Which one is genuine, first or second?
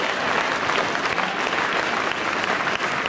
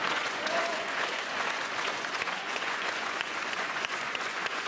first